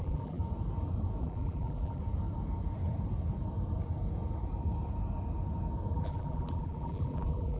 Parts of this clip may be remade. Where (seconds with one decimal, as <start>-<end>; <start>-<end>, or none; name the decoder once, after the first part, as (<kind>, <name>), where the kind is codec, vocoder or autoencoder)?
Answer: 0.0-0.4 (vocoder, BigVGAN v2); 1.2-2.0; 5.9-7.6